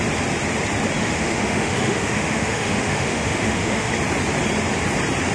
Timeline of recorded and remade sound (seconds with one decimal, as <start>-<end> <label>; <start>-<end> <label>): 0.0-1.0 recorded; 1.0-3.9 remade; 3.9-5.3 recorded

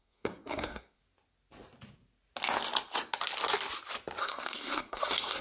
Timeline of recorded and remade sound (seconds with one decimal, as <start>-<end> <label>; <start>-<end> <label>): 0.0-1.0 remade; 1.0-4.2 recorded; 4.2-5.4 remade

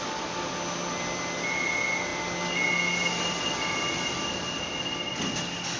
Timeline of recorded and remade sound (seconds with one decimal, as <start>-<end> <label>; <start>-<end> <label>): 0.0-5.8 recorded

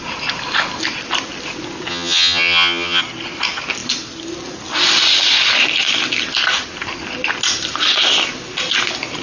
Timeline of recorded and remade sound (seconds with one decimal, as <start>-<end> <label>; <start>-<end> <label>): 0.0-1.9 recorded; 1.9-3.0 remade; 3.0-9.2 recorded

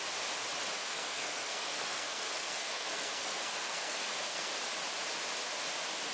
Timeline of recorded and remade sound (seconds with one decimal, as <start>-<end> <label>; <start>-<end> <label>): 0.0-0.8 recorded; 0.8-4.5 remade; 4.5-6.1 recorded

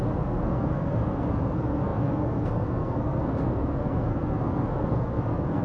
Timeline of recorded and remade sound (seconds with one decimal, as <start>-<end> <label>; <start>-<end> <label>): 0.0-5.6 remade